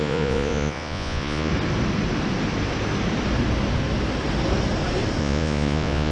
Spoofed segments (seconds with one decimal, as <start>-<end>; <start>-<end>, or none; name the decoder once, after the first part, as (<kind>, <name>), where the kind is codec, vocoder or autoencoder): 0.0-1.5 (vocoder, Vocos); 5.2-6.1